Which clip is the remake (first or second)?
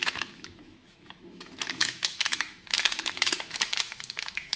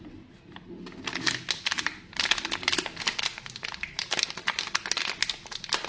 first